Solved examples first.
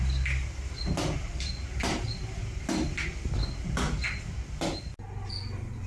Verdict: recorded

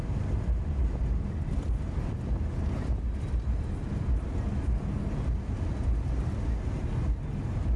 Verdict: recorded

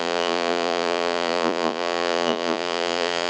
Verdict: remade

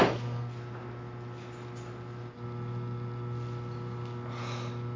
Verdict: recorded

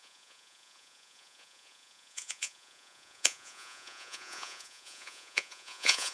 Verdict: remade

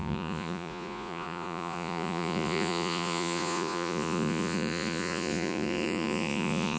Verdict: remade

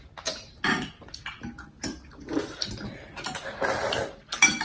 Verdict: recorded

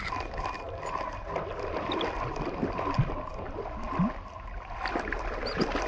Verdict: recorded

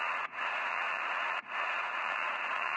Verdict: remade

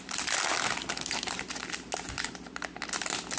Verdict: recorded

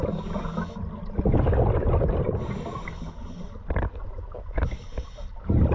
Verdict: recorded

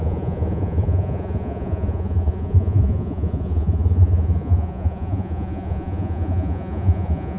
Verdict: remade